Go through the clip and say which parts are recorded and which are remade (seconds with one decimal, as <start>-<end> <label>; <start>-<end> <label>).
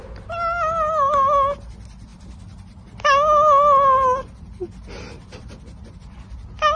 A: 0.0-6.8 recorded